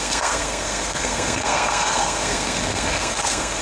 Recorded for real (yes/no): no